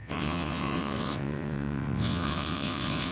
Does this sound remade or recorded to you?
remade